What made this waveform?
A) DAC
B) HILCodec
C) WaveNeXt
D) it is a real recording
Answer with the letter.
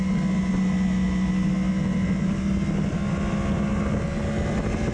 D